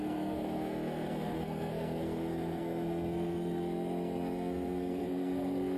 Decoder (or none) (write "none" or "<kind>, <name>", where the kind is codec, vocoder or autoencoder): codec, SNAC